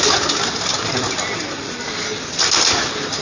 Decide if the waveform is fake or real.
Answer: real